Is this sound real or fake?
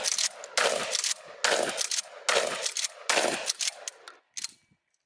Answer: real